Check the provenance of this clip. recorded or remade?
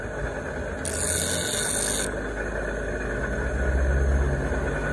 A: recorded